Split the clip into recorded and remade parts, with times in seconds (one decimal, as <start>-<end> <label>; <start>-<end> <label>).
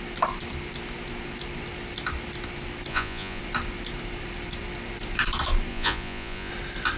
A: 0.0-2.9 recorded; 2.9-3.4 remade; 3.4-5.7 recorded; 5.7-6.5 remade; 6.5-7.0 recorded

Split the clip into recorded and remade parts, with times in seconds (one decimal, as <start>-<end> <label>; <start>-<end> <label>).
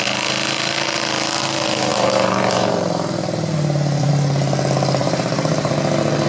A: 0.0-1.9 recorded; 1.9-4.1 remade; 4.1-5.0 recorded; 5.0-5.7 remade; 5.7-6.3 recorded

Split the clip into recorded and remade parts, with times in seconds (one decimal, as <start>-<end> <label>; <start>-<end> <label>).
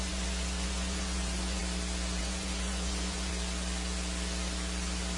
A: 0.0-1.6 remade; 1.6-2.2 recorded; 2.2-3.3 remade; 3.3-5.2 recorded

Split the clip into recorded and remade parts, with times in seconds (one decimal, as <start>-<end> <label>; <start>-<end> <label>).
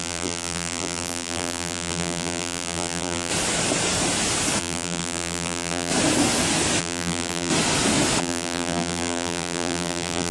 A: 0.0-3.3 remade; 3.3-4.6 recorded; 4.6-5.9 remade; 5.9-6.8 recorded; 6.8-7.5 remade; 7.5-8.2 recorded; 8.2-10.3 remade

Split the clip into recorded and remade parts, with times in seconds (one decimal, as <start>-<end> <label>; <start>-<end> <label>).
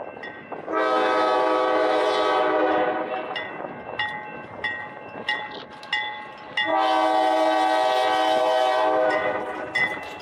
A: 0.0-10.2 recorded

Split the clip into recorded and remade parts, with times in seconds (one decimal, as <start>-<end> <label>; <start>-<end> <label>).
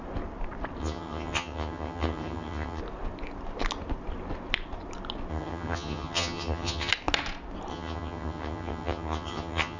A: 0.0-0.8 recorded; 0.8-2.8 remade; 2.8-5.3 recorded; 5.3-6.9 remade; 6.9-7.7 recorded; 7.7-9.8 remade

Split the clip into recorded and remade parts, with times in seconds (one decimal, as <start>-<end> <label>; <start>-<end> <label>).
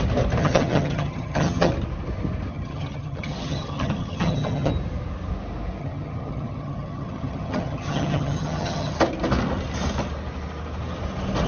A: 0.0-0.4 recorded; 0.4-1.7 remade; 1.7-2.5 recorded; 2.5-4.7 remade; 4.7-5.8 recorded; 5.8-8.9 remade; 8.9-11.5 recorded